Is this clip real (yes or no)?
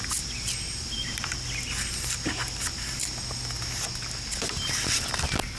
yes